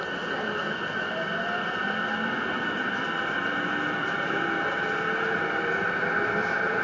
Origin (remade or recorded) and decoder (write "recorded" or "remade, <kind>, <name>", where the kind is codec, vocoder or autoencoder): remade, vocoder, BigVGAN v2